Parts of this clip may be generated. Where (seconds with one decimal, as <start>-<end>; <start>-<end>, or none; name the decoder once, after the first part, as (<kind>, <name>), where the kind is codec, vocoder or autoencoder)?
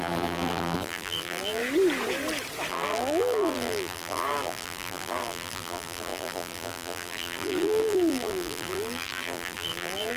0.0-1.6 (vocoder, BigVGAN v2); 2.7-10.2